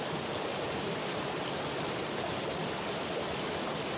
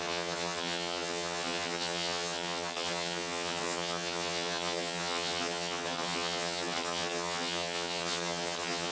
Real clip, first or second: first